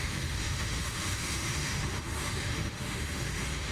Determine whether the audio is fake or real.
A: fake